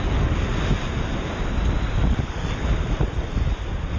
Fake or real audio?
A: real